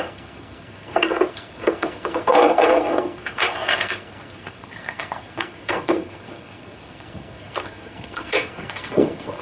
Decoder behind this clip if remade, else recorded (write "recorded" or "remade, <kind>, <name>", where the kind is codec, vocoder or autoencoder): remade, codec, SNAC